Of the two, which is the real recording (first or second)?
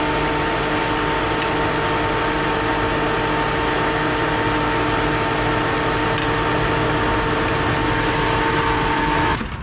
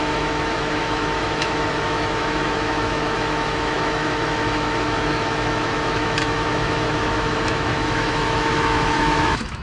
first